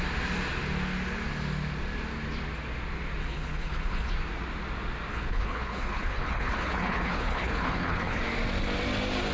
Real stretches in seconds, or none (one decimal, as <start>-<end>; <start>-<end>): 0.0-3.2; 4.1-5.1; 8.2-9.3